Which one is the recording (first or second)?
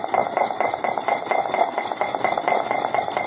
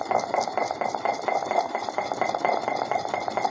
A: first